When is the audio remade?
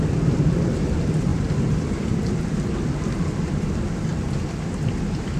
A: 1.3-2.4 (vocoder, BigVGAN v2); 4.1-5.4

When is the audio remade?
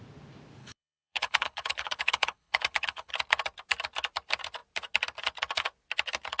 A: 0.6-3.1 (codec, HILCodec)